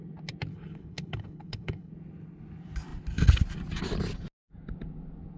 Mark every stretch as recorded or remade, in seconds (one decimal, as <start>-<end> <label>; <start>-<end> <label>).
0.0-0.5 recorded; 0.5-1.9 remade; 1.9-5.4 recorded